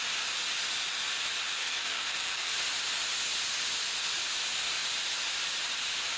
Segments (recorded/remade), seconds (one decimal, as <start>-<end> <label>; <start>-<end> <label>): 0.0-1.6 recorded; 1.6-2.5 remade; 2.5-6.2 recorded